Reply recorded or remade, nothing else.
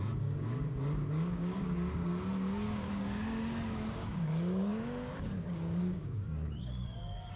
remade